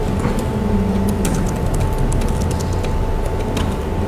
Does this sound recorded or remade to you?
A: recorded